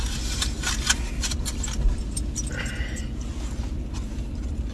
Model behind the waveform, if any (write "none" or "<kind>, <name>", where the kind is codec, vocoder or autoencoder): none